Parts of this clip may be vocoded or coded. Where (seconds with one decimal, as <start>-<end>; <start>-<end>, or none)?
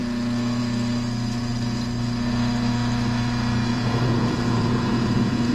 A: 3.7-5.5